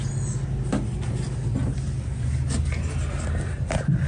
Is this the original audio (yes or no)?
yes